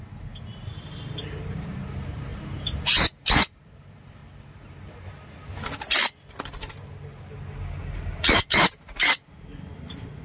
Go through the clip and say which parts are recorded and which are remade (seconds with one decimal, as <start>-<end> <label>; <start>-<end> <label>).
0.0-4.2 remade; 4.2-8.5 recorded; 8.5-9.5 remade; 9.5-10.2 recorded